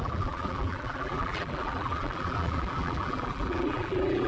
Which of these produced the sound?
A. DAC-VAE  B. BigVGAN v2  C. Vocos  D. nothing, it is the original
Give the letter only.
B